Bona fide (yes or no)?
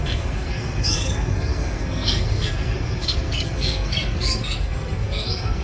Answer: no